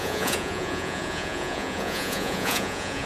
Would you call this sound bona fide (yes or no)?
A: no